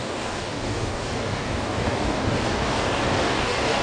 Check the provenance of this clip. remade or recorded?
remade